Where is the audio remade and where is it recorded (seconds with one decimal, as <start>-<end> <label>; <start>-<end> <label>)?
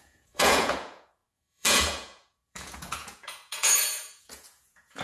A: 0.0-5.0 remade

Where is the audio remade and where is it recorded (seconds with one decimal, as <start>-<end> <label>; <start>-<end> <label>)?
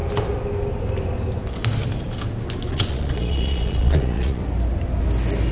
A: 0.0-2.7 recorded; 2.7-4.4 remade; 4.4-5.5 recorded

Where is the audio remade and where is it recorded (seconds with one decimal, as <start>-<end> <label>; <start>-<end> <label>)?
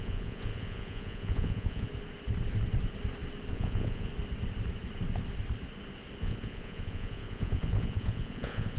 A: 0.0-1.9 remade; 1.9-3.5 recorded; 3.5-4.1 remade; 4.1-6.2 recorded; 6.2-8.8 remade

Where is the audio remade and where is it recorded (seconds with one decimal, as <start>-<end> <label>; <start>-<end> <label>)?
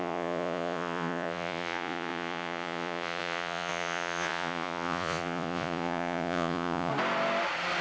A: 0.0-6.9 remade; 6.9-7.8 recorded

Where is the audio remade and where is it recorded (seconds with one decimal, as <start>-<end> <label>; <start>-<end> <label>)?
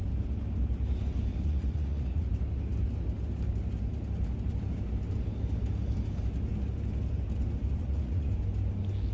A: 0.0-1.3 recorded; 1.3-2.3 remade; 2.3-7.8 recorded; 7.8-8.3 remade; 8.3-9.1 recorded